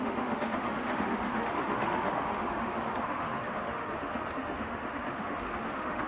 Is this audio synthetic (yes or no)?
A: yes